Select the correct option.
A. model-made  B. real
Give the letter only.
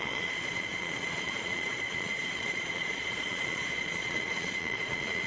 A